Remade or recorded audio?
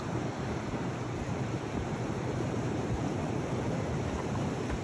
remade